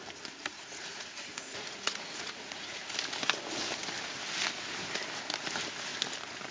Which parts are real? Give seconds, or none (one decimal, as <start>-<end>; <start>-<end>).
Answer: 0.0-0.9; 2.8-6.5